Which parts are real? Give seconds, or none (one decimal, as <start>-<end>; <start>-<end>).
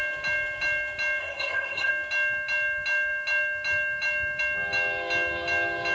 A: 0.0-1.2; 1.9-5.9